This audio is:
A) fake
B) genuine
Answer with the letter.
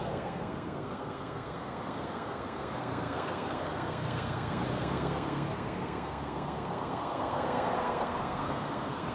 A